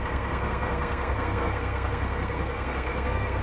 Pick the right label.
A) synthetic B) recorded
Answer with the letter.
A